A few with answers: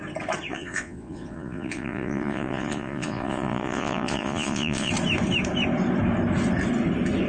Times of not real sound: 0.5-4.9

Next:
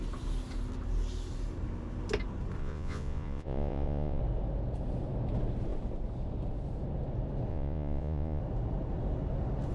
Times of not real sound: 2.6-4.2; 7.5-8.4